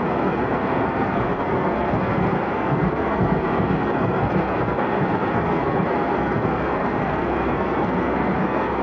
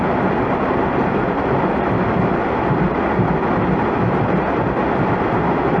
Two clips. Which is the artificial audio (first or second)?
first